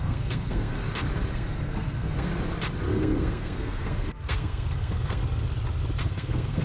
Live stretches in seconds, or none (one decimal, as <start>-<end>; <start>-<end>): 0.8-1.3; 2.3-2.9; 5.2-6.0